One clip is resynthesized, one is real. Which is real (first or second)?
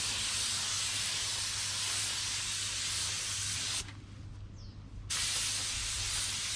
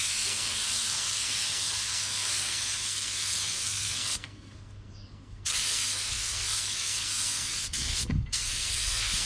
first